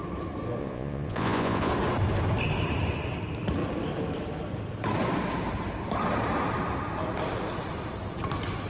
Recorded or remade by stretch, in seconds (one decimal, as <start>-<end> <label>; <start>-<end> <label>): 0.0-0.6 recorded; 0.6-1.7 remade; 1.7-8.7 recorded